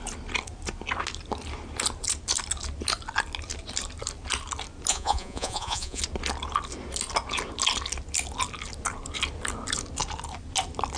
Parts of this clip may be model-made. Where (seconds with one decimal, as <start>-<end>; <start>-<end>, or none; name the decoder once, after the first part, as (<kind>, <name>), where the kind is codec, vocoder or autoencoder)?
4.9-6.0 (vocoder, Vocos)